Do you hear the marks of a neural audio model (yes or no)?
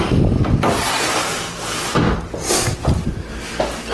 no